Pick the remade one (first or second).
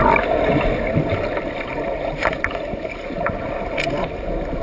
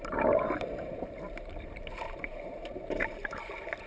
second